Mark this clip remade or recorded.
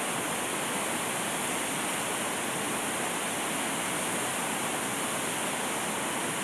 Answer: recorded